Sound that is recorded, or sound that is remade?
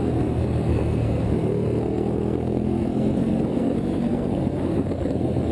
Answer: remade